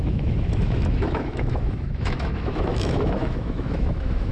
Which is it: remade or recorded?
remade